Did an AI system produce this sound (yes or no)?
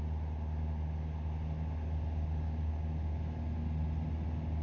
no